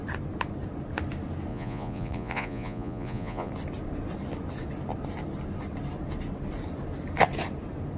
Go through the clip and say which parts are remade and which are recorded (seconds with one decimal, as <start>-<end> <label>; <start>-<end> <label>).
0.0-1.5 recorded; 1.5-3.5 remade; 3.5-8.0 recorded